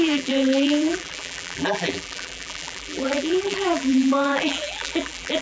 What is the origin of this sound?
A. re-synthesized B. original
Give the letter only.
A